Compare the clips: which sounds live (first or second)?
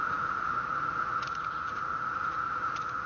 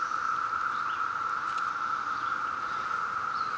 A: second